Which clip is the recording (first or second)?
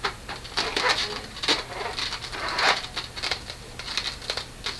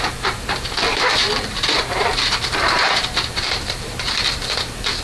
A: first